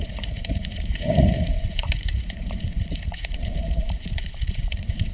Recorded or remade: remade